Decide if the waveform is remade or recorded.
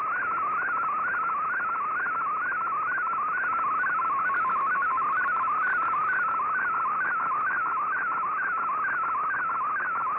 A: recorded